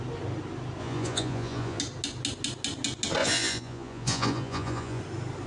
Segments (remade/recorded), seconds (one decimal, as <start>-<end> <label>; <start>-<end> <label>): 0.0-0.8 recorded; 0.8-1.8 remade; 1.8-3.2 recorded; 3.2-5.0 remade; 5.0-5.5 recorded